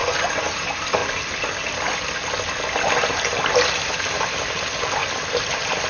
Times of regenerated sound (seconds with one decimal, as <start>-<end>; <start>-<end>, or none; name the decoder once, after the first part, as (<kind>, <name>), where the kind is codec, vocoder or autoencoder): 1.0-4.4 (vocoder, BigVGAN v2)